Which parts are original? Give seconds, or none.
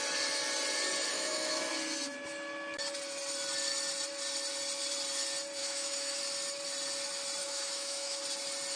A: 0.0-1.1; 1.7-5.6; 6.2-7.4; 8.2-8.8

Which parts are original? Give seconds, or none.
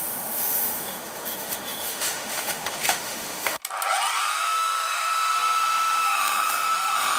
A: 3.6-4.2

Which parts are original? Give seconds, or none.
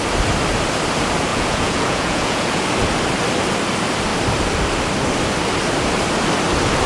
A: 0.0-1.3; 2.6-6.9